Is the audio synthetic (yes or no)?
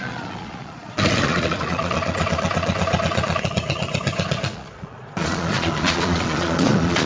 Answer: yes